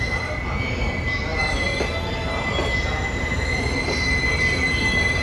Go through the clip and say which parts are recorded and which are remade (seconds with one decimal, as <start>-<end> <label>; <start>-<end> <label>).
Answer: 0.0-5.2 recorded